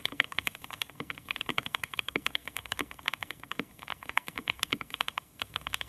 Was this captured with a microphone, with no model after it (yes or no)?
no